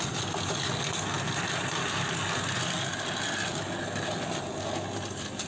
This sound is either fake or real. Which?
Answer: real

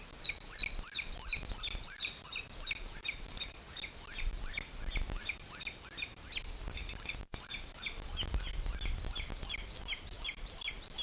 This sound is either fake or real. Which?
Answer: real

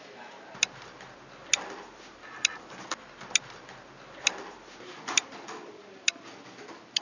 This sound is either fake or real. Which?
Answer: real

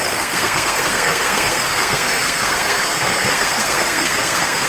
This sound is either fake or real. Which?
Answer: fake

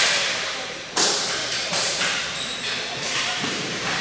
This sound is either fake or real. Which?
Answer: fake